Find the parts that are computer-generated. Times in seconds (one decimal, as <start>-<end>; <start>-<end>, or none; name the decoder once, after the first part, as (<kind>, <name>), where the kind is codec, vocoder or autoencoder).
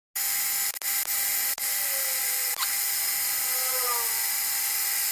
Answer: none